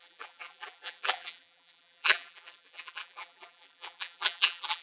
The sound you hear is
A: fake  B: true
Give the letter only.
A